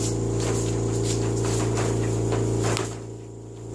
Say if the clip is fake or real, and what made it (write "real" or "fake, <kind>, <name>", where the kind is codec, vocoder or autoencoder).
real